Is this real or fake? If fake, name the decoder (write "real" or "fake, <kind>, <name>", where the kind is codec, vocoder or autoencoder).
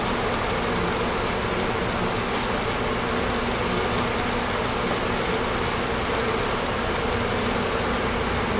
real